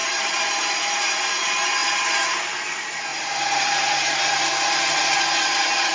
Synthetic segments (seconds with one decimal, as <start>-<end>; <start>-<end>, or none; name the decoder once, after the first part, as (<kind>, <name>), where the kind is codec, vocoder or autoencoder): 0.0-0.8 (vocoder, BigVGAN v2); 1.8-2.5; 3.1-4.2